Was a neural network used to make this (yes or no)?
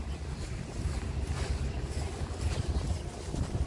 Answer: no